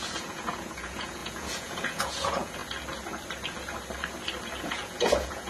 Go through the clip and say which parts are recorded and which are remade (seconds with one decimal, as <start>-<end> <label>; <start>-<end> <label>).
0.0-2.6 remade; 2.6-4.6 recorded; 4.6-5.5 remade